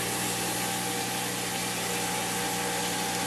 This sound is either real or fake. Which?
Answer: real